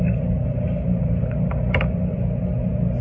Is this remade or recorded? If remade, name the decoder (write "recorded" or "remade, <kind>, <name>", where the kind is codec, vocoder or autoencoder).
recorded